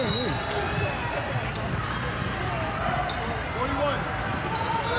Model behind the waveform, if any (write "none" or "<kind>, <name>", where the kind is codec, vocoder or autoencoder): none